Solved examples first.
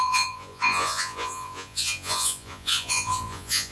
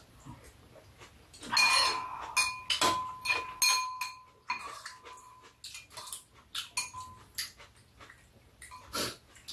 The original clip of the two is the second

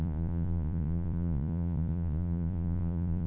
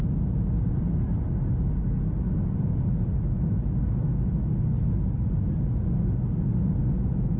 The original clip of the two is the second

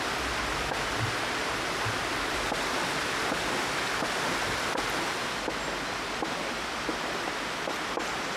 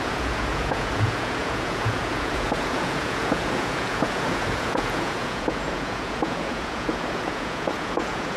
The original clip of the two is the first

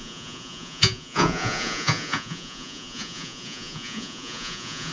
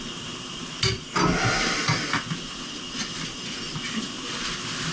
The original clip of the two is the second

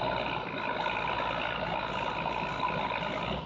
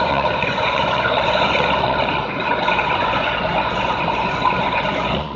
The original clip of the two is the first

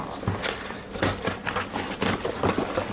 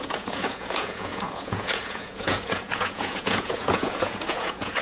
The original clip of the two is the first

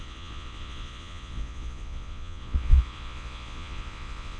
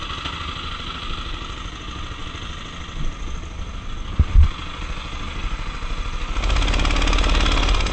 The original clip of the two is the second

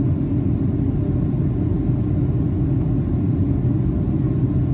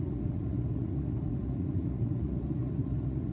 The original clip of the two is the first